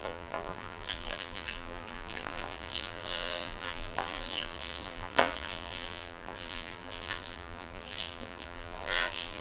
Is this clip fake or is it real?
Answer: fake